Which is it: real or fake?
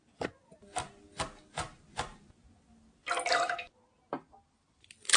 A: real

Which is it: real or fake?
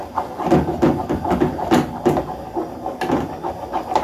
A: real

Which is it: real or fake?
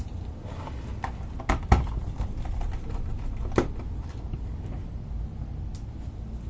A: fake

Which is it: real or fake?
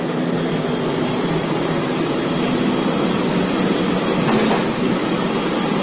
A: real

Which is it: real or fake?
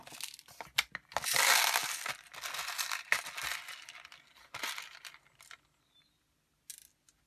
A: real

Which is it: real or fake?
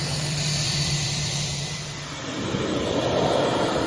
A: fake